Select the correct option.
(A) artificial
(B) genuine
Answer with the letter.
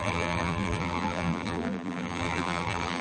A